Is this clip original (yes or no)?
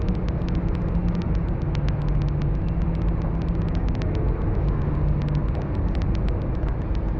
yes